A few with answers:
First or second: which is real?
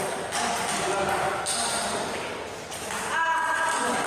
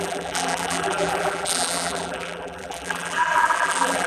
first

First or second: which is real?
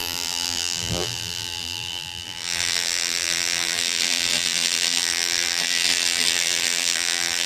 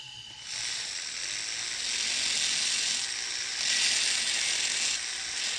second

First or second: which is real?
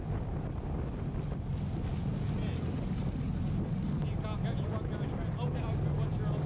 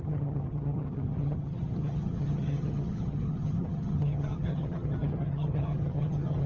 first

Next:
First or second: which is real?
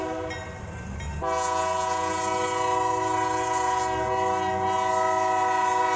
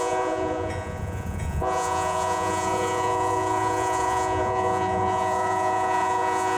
first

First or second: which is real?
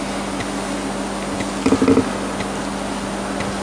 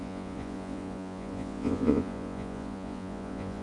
first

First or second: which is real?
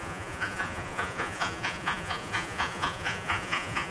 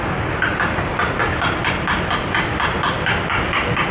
second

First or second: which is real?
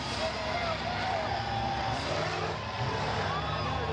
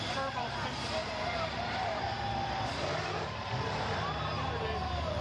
first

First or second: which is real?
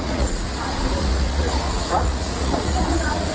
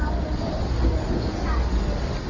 second